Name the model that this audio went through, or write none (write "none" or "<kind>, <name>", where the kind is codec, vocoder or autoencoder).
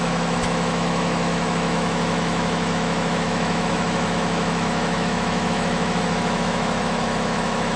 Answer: autoencoder, DAC-VAE